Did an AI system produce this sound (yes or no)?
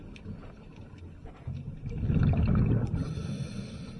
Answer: no